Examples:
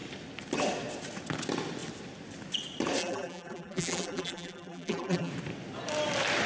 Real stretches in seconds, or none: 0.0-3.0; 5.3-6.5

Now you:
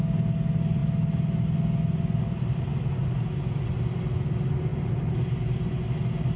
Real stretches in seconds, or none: 0.0-6.4

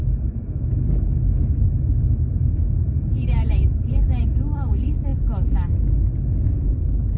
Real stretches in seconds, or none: 0.0-2.4; 4.3-7.2